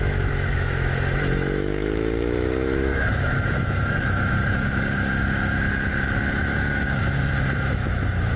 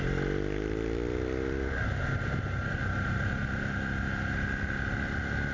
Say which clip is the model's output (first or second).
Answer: first